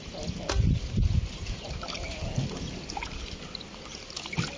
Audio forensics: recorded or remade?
recorded